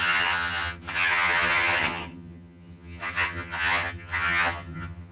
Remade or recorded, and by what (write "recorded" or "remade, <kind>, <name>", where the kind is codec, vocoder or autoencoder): remade, vocoder, HiFi-GAN